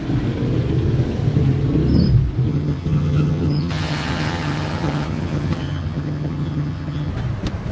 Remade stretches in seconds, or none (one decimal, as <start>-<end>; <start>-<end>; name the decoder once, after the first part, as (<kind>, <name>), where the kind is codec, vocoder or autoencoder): 2.5-7.1 (vocoder, HiFi-GAN)